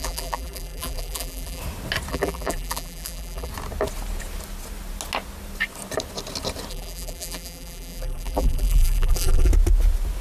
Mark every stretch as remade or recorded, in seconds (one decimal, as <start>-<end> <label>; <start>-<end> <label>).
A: 0.0-1.6 remade; 1.6-2.1 recorded; 2.1-3.5 remade; 3.5-6.7 recorded; 6.7-9.5 remade; 9.5-10.2 recorded